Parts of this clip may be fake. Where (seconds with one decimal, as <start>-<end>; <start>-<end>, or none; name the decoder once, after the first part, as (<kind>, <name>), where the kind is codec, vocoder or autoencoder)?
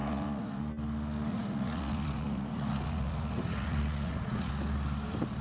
0.0-0.6 (vocoder, Vocos); 1.3-4.5